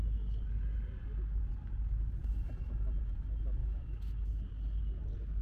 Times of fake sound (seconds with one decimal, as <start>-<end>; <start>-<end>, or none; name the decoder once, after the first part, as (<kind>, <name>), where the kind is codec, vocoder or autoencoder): 3.6-4.4 (autoencoder, DAC-VAE)